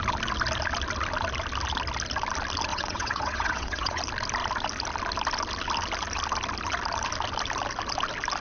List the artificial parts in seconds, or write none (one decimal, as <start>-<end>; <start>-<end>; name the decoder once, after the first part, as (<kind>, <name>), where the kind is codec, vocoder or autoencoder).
2.7-4.0 (vocoder, WaveNeXt)